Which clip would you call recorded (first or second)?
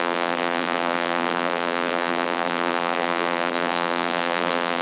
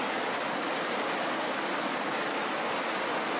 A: second